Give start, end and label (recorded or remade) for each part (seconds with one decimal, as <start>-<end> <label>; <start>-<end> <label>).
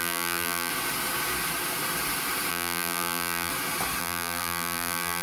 0.0-0.7 remade; 0.7-2.5 recorded; 2.5-3.5 remade; 3.5-4.0 recorded; 4.0-5.2 remade